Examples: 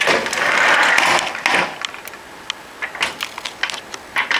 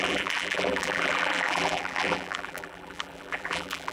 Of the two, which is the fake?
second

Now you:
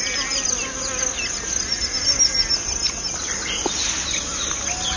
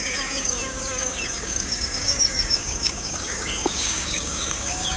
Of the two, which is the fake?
second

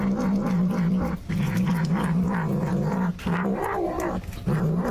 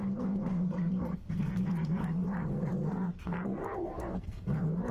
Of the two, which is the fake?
second